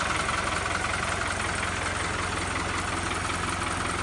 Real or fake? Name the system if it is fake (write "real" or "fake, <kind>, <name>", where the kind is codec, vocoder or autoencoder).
real